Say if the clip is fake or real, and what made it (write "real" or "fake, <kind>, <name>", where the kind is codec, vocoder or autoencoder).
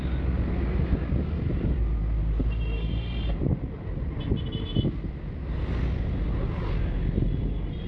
real